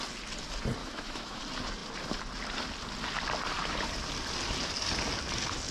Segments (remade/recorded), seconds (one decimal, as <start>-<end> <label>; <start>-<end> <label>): 0.0-0.8 recorded; 0.8-1.4 remade; 1.4-5.7 recorded